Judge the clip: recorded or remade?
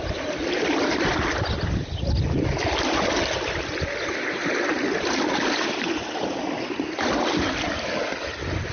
recorded